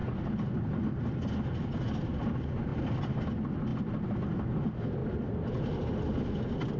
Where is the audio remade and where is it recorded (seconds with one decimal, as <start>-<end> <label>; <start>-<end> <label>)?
0.0-6.8 recorded